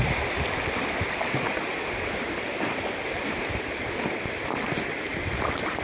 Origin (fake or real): real